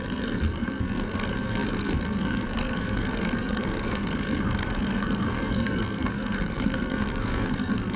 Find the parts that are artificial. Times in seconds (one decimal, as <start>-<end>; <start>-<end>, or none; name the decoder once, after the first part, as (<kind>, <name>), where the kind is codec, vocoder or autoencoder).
0.0-8.0 (codec, SNAC)